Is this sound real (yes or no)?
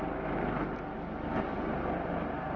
yes